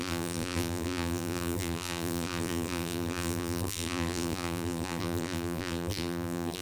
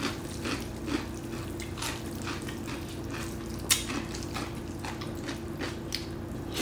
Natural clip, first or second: second